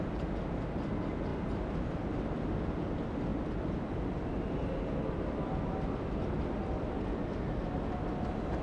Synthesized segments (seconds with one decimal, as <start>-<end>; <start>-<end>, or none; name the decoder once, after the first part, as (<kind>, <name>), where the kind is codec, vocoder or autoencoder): none